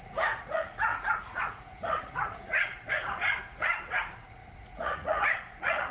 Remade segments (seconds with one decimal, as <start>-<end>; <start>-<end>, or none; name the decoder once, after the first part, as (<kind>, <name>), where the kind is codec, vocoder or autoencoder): 0.0-5.9 (vocoder, Vocos)